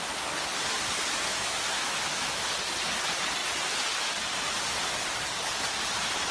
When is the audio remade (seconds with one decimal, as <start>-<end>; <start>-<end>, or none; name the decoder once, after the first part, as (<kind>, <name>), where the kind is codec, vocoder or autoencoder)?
1.3-2.4 (autoencoder, DAC-VAE)